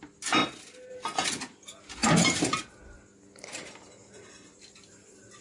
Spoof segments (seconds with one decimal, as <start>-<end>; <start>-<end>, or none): none